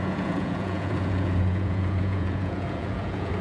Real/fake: fake